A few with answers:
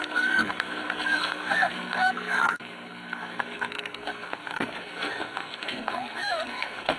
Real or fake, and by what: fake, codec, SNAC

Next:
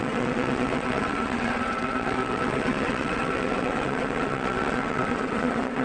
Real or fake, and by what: fake, vocoder, WaveNeXt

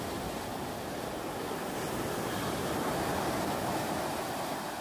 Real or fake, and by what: real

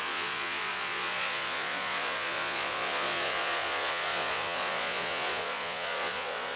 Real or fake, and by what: fake, vocoder, Vocos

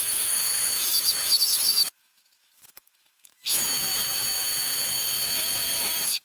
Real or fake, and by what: fake, autoencoder, DAC-VAE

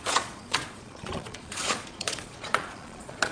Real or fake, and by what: fake, vocoder, Vocos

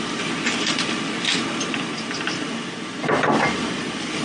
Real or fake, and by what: real